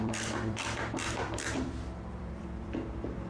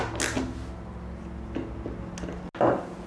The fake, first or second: first